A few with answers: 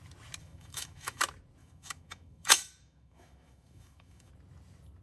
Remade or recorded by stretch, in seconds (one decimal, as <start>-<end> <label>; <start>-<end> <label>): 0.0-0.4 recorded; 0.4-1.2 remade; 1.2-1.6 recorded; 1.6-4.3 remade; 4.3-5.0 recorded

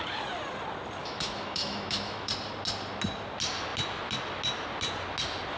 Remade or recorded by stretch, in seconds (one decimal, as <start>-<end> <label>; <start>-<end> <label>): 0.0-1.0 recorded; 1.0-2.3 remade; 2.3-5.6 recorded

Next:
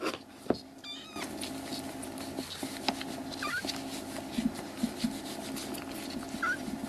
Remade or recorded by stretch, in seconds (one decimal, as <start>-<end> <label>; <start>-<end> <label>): 0.0-6.9 recorded